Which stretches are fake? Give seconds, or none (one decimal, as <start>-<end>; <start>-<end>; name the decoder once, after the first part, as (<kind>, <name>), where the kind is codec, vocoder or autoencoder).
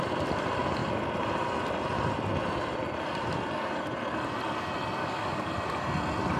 5.0-5.5 (codec, DAC)